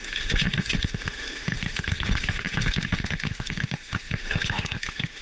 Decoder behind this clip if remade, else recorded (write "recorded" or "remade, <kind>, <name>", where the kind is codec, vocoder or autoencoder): remade, autoencoder, DAC-VAE